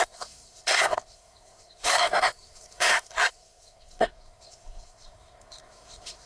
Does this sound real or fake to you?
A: fake